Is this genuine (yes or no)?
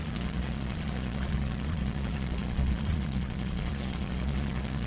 no